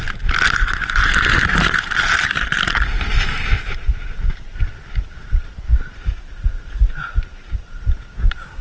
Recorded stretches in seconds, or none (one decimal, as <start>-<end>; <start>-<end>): 0.0-5.7; 7.8-8.6